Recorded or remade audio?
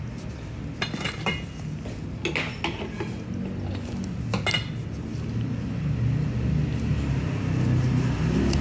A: recorded